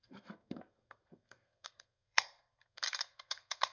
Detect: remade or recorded remade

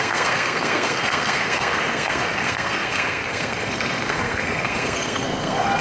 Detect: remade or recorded remade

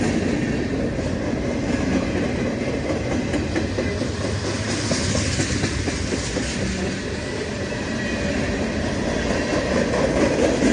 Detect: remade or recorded recorded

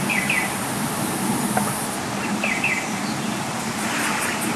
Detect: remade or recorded recorded